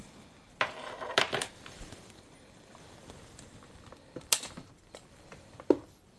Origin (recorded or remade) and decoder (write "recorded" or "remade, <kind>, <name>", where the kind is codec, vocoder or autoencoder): remade, vocoder, BigVGAN v2